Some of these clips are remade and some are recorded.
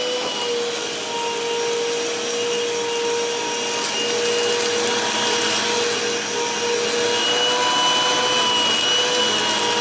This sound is recorded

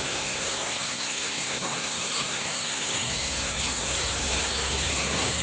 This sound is remade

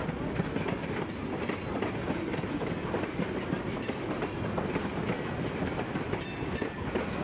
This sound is recorded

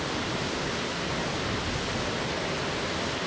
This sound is recorded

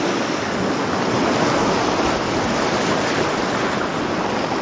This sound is recorded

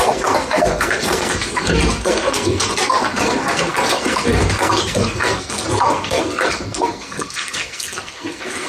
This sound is remade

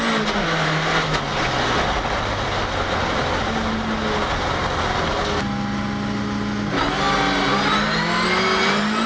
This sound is recorded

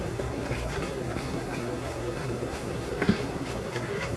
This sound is remade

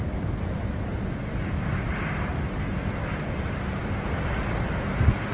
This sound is recorded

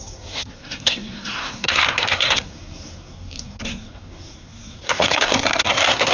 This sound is remade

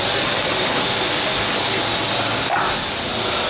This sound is recorded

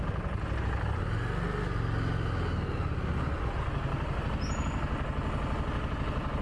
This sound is recorded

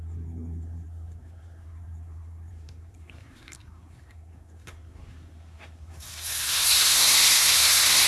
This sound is remade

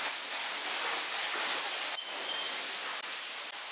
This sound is recorded